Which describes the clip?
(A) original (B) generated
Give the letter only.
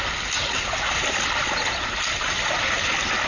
A